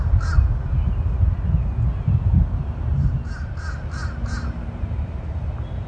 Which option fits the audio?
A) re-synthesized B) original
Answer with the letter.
B